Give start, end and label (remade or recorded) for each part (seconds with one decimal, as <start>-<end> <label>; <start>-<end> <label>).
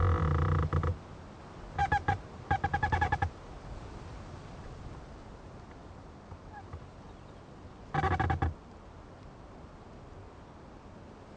0.0-1.8 recorded; 1.8-3.5 remade; 3.5-11.4 recorded